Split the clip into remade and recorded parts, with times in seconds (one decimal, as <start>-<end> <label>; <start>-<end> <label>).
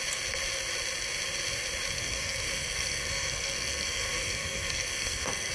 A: 0.0-2.0 recorded; 2.0-5.5 remade